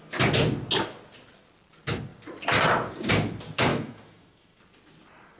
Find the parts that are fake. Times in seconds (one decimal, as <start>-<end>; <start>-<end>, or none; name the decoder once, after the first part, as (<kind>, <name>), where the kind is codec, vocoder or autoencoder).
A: 3.7-4.6 (autoencoder, DAC-VAE)